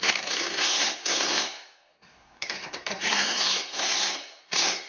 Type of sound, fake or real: fake